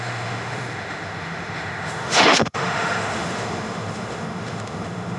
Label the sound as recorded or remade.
remade